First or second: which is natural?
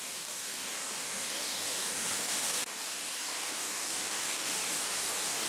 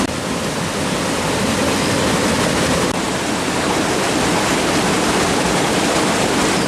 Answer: second